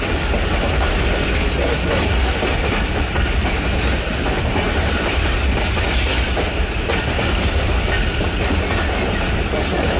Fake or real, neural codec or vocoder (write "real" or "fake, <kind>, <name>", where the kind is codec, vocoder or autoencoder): real